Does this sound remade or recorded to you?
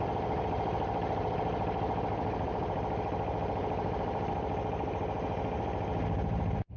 recorded